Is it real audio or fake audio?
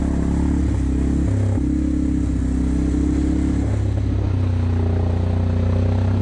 real